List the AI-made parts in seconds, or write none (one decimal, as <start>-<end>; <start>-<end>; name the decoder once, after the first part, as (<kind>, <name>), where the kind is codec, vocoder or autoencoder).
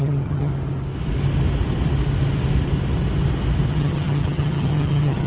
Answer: 0.0-0.5 (vocoder, HiFi-GAN); 3.7-5.3